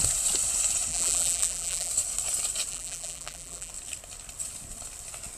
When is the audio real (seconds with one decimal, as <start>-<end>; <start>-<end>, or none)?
0.0-0.9; 1.9-2.7; 3.7-5.4

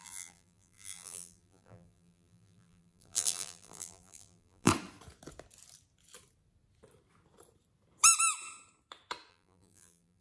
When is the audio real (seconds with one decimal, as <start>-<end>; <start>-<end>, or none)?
4.7-9.3

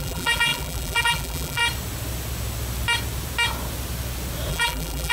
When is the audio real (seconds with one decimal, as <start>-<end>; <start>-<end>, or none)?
1.6-4.5

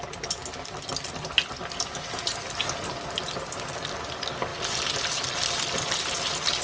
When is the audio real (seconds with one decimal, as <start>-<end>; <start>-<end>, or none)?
0.0-6.6

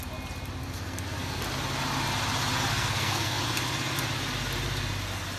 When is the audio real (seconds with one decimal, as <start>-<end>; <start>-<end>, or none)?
0.0-0.6; 1.4-2.7; 3.4-5.4

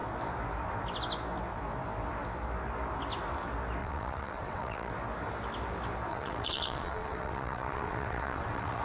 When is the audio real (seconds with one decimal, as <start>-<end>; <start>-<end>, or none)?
0.0-3.8; 4.9-6.1

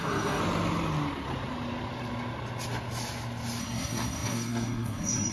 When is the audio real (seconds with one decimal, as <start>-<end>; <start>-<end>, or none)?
0.4-3.6